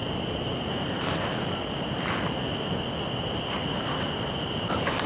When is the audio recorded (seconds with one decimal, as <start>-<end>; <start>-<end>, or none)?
0.0-5.1